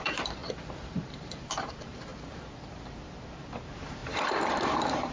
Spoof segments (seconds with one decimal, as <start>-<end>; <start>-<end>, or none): 0.0-0.4; 1.0-2.1; 2.7-5.1